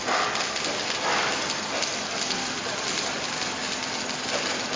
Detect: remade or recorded recorded